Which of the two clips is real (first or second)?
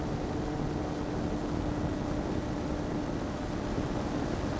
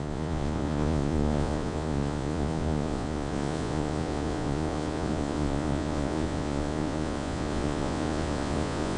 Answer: first